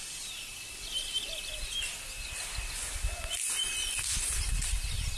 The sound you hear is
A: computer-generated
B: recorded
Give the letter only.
B